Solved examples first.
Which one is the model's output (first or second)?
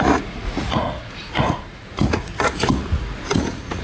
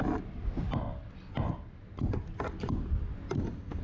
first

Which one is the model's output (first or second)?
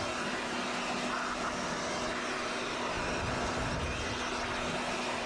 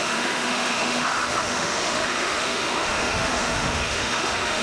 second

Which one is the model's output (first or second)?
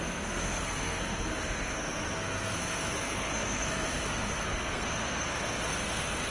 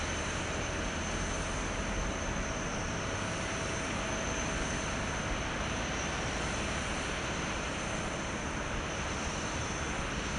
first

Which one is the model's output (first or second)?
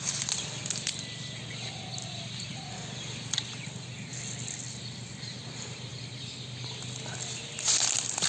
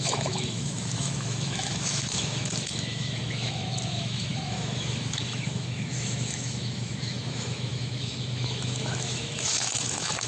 second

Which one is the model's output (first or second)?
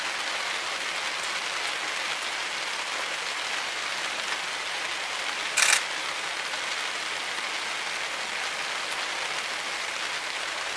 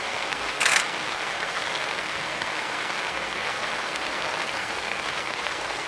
second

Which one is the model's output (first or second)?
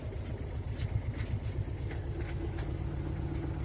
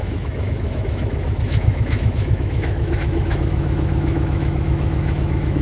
second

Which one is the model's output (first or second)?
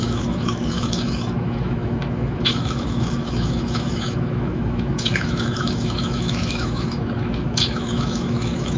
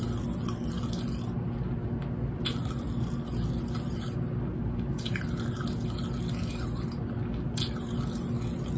first